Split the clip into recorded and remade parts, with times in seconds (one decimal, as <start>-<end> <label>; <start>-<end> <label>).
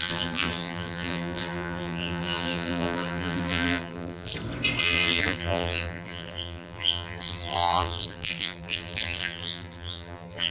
0.0-4.3 remade; 4.3-4.8 recorded; 4.8-10.5 remade